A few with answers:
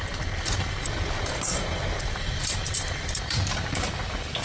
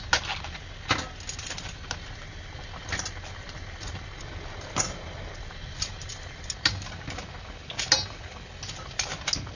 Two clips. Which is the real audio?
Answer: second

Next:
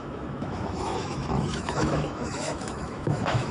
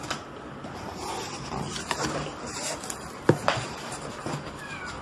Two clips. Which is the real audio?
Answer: second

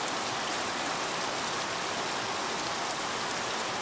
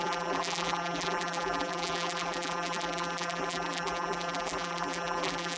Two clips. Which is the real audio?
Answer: first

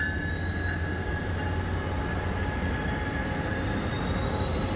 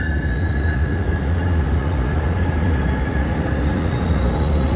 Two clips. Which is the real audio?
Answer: first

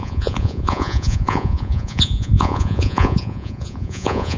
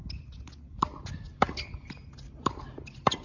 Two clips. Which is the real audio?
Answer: second